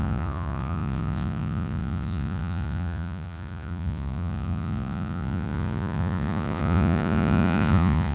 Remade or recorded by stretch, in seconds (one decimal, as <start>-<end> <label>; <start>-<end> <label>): 0.0-8.1 remade